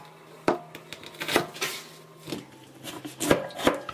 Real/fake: real